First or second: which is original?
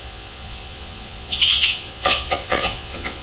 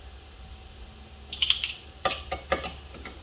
second